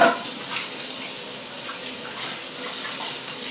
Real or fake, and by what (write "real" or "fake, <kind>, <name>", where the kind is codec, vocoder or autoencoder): real